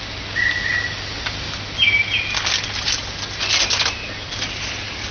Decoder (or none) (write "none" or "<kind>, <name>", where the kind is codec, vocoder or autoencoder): none